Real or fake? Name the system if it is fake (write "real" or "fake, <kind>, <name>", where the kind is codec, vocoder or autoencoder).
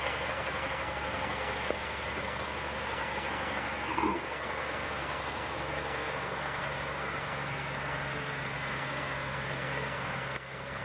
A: fake, codec, SNAC